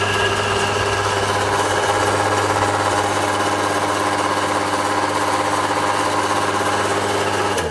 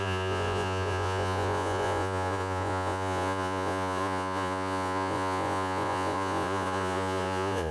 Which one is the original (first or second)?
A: first